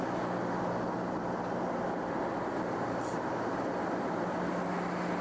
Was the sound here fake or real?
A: real